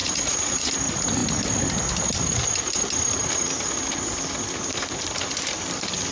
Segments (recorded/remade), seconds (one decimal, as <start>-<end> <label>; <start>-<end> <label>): 0.0-0.7 remade; 0.7-6.1 recorded